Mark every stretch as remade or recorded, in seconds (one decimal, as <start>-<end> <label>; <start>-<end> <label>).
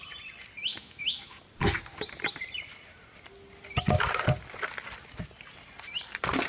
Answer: 0.0-0.7 recorded; 0.7-1.4 remade; 1.4-6.5 recorded